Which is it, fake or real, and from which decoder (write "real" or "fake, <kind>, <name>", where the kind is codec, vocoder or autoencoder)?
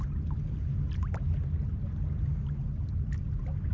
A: real